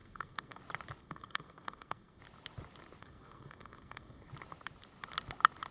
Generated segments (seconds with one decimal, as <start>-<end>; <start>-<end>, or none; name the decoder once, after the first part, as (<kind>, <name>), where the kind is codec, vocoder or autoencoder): 0.0-0.6 (codec, SNAC); 1.0-2.2; 3.0-4.3